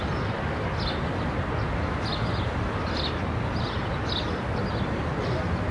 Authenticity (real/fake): real